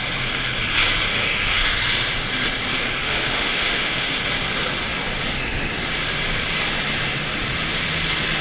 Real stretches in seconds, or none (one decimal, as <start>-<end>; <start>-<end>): 0.0-1.1; 1.8-3.0; 4.1-8.4